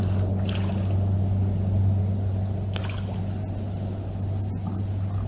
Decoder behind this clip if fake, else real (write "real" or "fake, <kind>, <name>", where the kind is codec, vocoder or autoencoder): real